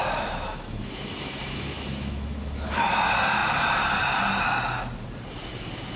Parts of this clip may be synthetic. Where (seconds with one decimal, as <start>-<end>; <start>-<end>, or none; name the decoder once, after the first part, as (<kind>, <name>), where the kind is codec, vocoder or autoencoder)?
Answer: 0.0-2.9 (autoencoder, DAC-VAE)